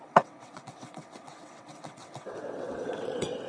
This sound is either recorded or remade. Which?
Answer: remade